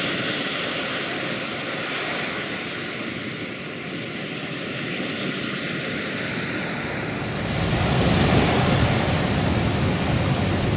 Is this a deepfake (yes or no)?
no